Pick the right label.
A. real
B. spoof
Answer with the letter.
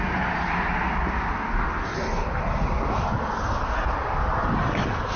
A